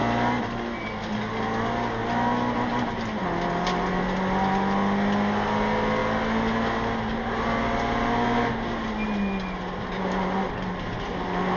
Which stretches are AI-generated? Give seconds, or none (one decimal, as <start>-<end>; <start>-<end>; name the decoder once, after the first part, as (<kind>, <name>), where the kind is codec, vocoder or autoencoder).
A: none

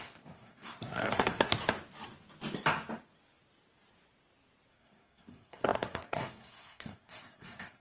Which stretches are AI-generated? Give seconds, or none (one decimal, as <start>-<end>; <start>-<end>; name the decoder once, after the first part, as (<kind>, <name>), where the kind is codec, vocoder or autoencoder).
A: 0.0-1.5 (codec, SNAC); 4.7-7.8

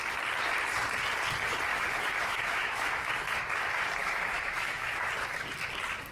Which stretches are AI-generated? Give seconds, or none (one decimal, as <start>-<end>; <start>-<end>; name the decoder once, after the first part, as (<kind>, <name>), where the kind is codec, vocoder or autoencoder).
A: 1.7-3.1 (autoencoder, DAC-VAE); 4.0-5.1

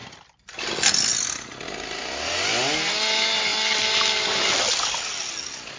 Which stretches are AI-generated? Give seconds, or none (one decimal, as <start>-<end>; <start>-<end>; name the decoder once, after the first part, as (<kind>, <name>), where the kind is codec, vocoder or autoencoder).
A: none